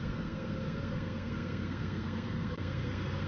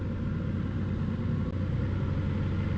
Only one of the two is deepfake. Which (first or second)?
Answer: first